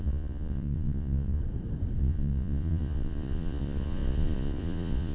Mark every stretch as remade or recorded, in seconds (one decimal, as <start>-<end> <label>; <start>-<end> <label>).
0.0-1.4 remade; 1.4-2.0 recorded; 2.0-5.1 remade